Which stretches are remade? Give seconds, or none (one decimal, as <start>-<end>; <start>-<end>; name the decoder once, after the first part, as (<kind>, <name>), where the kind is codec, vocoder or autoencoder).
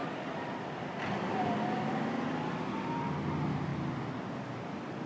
none